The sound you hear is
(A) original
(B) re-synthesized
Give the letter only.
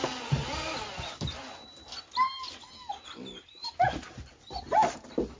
A